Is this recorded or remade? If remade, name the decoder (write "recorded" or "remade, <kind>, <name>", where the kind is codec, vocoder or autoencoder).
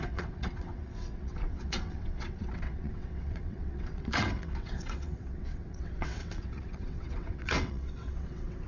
remade, vocoder, WaveNeXt